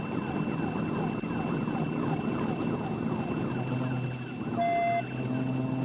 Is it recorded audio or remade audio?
recorded